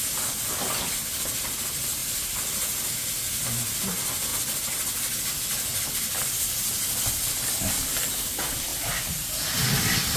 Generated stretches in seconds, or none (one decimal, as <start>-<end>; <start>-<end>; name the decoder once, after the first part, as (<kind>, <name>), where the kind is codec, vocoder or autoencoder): none